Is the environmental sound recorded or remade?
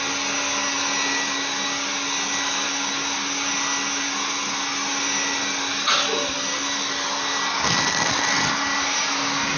recorded